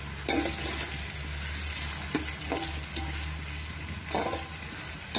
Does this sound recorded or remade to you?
recorded